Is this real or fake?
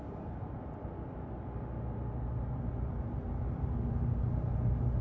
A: real